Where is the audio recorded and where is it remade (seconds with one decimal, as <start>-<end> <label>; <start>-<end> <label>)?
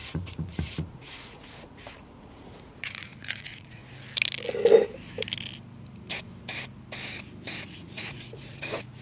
0.0-3.8 remade; 3.8-7.6 recorded; 7.6-9.0 remade